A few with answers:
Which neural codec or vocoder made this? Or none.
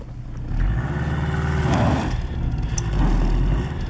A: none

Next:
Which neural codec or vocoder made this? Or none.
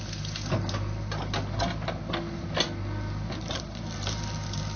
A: none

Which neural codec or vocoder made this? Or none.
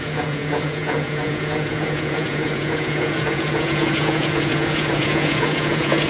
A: vocoder, Vocos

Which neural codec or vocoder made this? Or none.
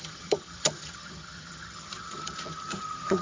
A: vocoder, HiFi-GAN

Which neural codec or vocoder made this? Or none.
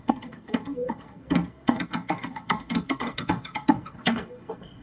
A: codec, SNAC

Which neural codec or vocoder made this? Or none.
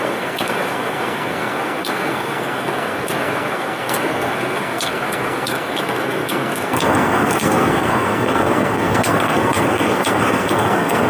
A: codec, SNAC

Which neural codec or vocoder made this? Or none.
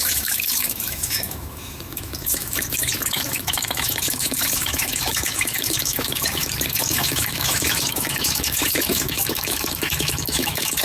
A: autoencoder, DAC-VAE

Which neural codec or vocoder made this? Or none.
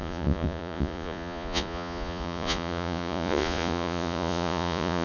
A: vocoder, Vocos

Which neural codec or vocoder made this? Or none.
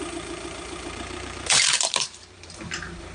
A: vocoder, BigVGAN v2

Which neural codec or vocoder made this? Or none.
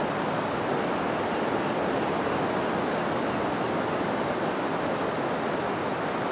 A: none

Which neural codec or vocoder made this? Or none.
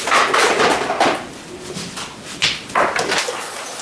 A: none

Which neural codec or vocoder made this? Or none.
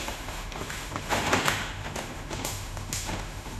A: autoencoder, DAC-VAE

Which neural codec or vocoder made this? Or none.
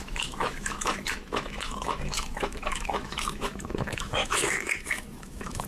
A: autoencoder, DAC-VAE